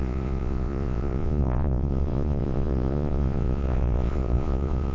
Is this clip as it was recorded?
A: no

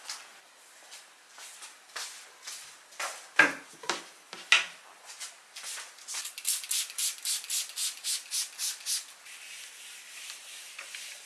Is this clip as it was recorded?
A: yes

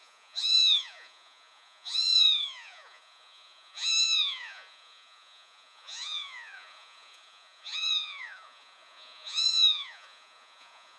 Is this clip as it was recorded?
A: no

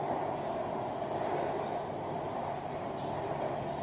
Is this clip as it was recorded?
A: yes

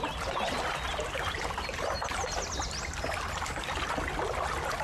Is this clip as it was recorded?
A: yes